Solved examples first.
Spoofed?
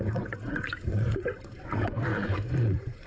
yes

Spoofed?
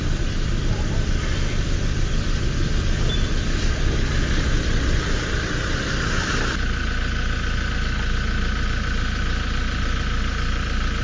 no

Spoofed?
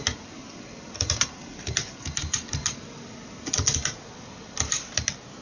no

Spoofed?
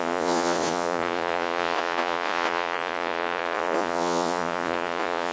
yes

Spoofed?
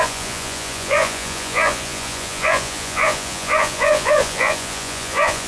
yes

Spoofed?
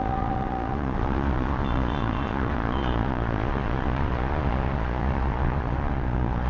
yes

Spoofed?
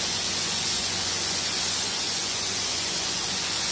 yes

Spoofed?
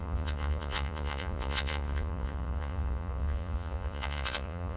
yes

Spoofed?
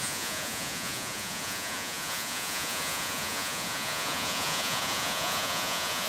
yes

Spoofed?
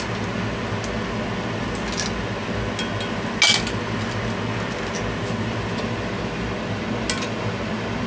no